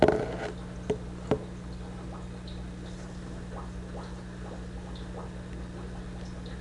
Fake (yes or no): no